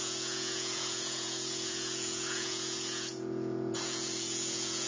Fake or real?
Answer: fake